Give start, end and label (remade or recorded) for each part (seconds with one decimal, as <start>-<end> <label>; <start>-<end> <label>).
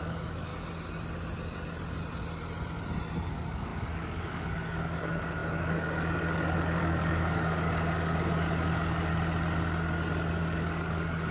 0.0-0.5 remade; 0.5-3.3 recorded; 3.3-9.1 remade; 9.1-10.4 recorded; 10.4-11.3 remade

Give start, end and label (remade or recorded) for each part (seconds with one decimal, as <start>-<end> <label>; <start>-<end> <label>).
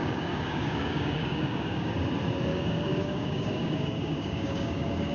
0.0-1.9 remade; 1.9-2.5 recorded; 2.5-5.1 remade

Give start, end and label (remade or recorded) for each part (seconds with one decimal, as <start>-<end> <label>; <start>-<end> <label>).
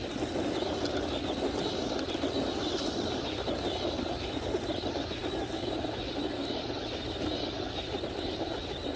0.0-9.0 recorded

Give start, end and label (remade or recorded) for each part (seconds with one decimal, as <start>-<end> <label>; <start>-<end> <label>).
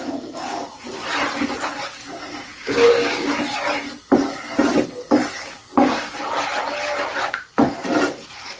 0.0-2.5 recorded; 2.5-3.3 remade; 3.3-5.6 recorded; 5.6-6.2 remade; 6.2-8.6 recorded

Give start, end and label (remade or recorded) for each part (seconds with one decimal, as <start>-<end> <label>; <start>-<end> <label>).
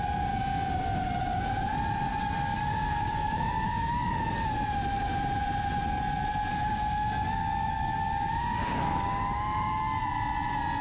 0.0-2.1 recorded; 2.1-4.1 remade; 4.1-6.5 recorded; 6.5-10.0 remade; 10.0-10.8 recorded